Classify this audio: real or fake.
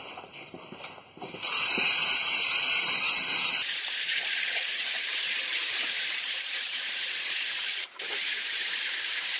fake